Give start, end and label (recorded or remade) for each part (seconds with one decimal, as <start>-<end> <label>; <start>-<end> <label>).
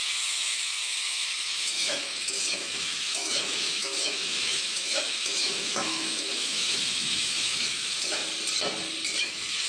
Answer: 0.0-8.2 remade; 8.2-9.2 recorded; 9.2-9.7 remade